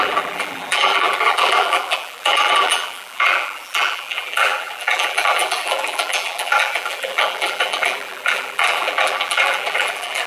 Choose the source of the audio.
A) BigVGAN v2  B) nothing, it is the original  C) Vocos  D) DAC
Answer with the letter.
A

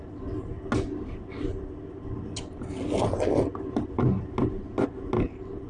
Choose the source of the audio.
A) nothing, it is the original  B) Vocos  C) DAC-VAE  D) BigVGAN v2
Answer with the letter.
A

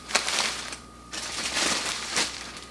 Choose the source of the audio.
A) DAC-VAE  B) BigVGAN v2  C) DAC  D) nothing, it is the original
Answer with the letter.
B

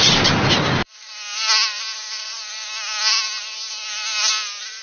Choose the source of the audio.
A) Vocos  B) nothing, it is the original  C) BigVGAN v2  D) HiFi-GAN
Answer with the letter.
B